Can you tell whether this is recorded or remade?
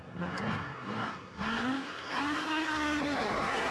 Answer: remade